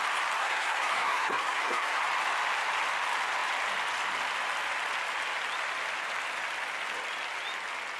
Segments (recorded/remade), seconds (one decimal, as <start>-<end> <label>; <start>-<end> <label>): 0.0-0.4 recorded; 0.4-2.0 remade; 2.0-8.0 recorded